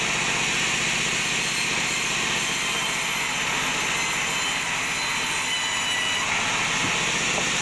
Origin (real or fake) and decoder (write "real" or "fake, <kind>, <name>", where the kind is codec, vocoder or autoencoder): real